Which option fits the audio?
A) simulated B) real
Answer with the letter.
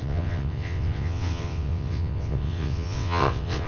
A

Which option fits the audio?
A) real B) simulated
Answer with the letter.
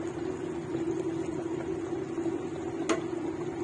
A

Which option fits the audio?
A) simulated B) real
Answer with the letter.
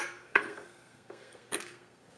A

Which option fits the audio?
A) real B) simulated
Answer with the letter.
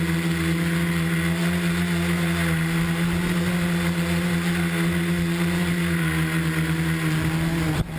A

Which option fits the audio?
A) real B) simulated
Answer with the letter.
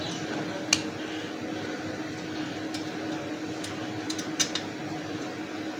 A